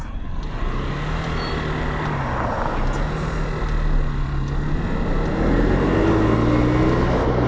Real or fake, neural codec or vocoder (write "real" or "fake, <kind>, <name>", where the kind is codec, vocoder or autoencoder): real